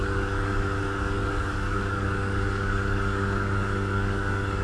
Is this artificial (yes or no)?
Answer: yes